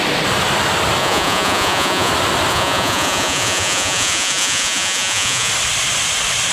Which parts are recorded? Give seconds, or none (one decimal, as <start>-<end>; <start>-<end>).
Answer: 0.0-1.0; 2.1-2.5; 5.5-6.5